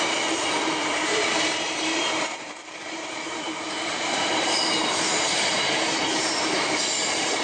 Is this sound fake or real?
fake